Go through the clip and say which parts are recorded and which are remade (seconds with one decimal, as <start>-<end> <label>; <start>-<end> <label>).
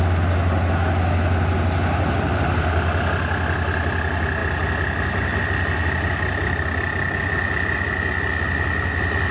0.0-9.3 recorded